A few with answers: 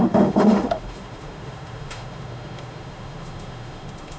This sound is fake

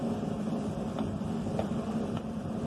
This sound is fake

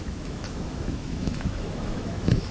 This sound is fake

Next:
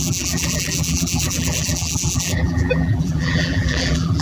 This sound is fake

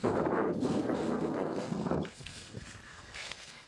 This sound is fake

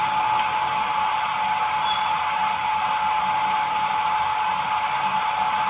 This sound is real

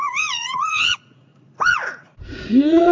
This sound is fake